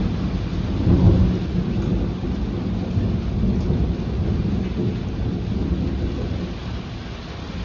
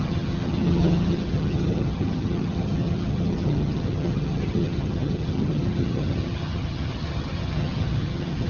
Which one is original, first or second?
first